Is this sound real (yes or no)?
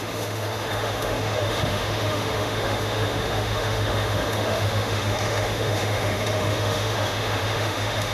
no